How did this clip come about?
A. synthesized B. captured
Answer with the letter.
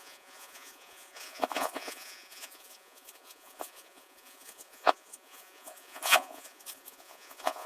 A